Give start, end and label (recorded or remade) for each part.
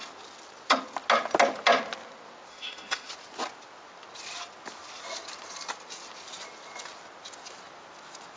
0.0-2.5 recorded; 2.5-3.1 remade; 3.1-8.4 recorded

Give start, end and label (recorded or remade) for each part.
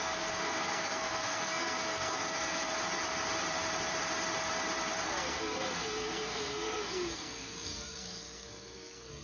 0.0-2.7 remade; 2.7-5.0 recorded; 5.0-9.2 remade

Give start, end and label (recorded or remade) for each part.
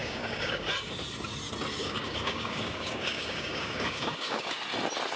0.0-0.7 remade; 0.7-1.8 recorded; 1.8-4.6 remade; 4.6-5.2 recorded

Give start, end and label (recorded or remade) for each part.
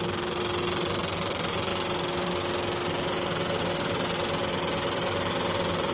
0.0-5.9 recorded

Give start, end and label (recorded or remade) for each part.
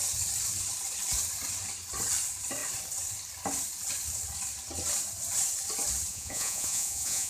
0.0-6.1 recorded; 6.1-7.3 remade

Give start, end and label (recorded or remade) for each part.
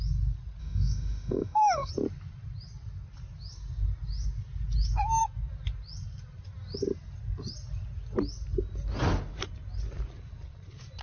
0.0-0.6 recorded; 0.6-1.9 remade; 1.9-11.0 recorded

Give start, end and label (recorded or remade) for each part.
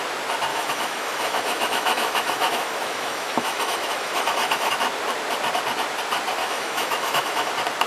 0.0-0.5 recorded; 0.5-4.7 remade; 4.7-6.4 recorded; 6.4-7.5 remade; 7.5-7.9 recorded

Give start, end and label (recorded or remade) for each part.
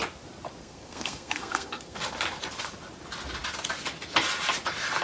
0.0-0.6 recorded; 0.6-2.0 remade; 2.0-5.0 recorded